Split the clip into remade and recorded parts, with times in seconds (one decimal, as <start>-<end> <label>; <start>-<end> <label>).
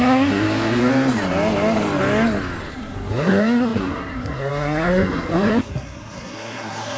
0.0-0.9 remade; 0.9-2.7 recorded; 2.7-7.0 remade